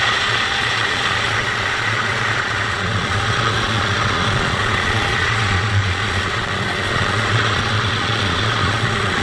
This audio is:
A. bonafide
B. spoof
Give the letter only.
B